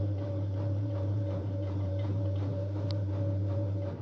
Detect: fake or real fake